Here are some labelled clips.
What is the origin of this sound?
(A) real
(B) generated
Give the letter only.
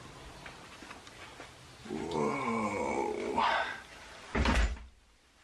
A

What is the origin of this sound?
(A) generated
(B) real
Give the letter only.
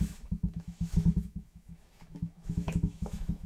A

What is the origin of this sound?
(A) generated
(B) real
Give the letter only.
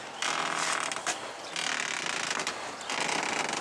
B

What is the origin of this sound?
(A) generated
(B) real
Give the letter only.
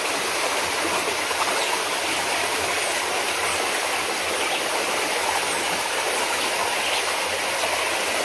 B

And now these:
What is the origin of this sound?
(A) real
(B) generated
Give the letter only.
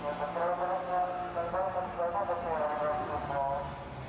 A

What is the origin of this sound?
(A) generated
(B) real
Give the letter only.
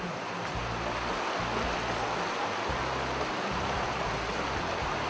B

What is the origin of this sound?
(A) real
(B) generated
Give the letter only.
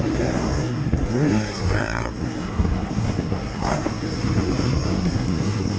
B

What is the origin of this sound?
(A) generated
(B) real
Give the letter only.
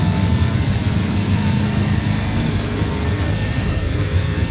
A